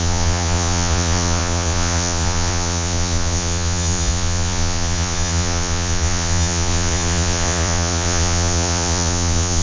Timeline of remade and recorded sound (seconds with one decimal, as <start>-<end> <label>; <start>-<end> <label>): 0.0-9.6 remade